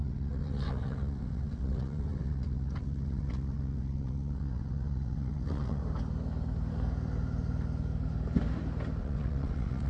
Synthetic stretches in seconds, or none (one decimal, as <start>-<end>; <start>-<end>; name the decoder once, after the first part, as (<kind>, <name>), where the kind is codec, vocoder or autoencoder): 0.0-5.8 (vocoder, WaveNeXt); 9.0-9.9